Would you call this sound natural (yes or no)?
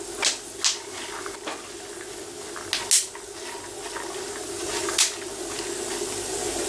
yes